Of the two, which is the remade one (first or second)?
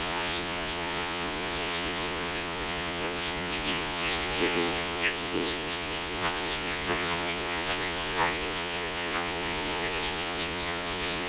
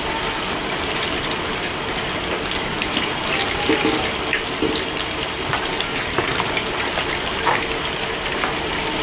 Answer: first